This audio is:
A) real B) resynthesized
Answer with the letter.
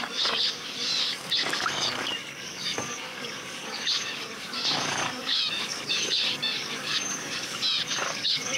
B